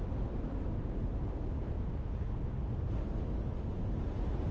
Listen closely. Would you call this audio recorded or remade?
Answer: recorded